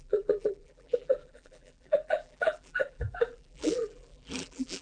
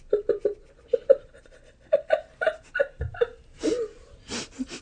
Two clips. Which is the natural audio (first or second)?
second